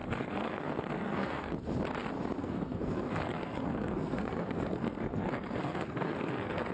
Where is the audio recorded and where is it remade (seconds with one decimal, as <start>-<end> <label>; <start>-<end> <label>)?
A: 0.0-1.5 remade; 1.5-2.4 recorded; 2.4-6.7 remade